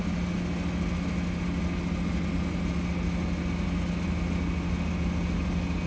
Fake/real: real